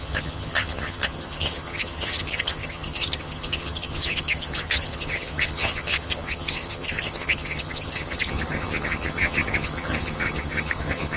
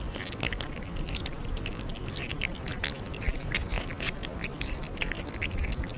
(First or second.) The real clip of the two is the second